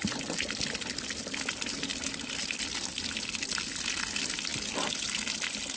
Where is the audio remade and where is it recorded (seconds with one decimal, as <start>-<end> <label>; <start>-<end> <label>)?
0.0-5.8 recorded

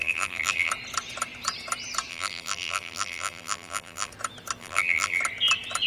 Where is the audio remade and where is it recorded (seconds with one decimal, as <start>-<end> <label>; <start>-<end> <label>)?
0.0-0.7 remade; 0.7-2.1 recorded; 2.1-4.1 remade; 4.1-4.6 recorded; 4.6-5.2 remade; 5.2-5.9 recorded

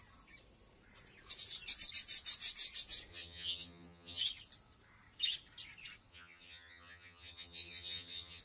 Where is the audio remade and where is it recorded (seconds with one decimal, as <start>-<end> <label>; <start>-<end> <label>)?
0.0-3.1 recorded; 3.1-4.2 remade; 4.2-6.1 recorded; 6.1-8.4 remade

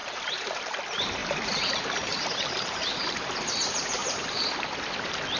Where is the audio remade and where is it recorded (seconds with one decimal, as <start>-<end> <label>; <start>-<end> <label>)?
0.0-0.6 remade; 0.6-1.2 recorded; 1.2-3.5 remade; 3.5-4.0 recorded; 4.0-4.5 remade; 4.5-5.4 recorded

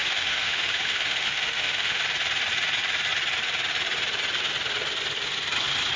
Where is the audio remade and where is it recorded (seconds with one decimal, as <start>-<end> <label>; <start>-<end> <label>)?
0.0-2.0 remade; 2.0-6.0 recorded